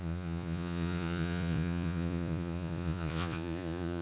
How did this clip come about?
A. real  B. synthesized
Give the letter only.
B